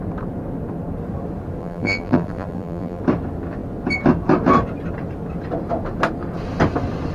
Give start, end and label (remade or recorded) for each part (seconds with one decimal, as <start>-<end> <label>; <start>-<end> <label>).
0.0-1.6 recorded; 1.6-3.0 remade; 3.0-7.1 recorded